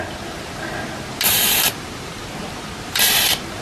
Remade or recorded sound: recorded